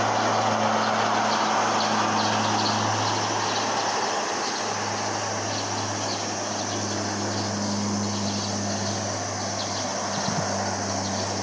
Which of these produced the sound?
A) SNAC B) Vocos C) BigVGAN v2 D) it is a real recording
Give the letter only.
D